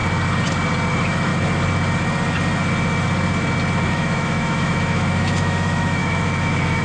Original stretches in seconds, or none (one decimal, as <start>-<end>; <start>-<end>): 0.0-0.9; 1.3-3.9